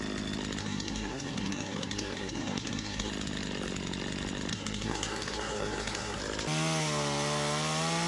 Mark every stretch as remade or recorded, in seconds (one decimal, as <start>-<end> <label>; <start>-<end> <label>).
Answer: 0.0-0.6 recorded; 0.6-3.1 remade; 3.1-4.5 recorded; 4.5-6.2 remade; 6.2-8.1 recorded